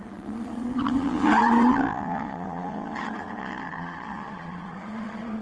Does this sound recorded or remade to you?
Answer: remade